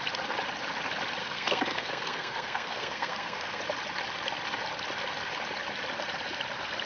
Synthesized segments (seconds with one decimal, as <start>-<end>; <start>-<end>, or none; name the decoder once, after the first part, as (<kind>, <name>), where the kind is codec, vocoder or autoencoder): 1.2-3.6 (codec, SNAC)